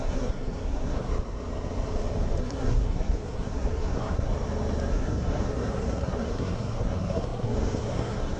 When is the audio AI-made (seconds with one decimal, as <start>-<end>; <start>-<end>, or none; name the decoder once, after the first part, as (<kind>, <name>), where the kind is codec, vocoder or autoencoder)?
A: 0.0-1.1 (codec, SNAC); 2.4-4.3; 4.9-8.4